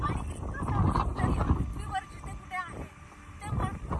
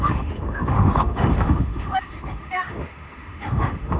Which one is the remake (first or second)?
second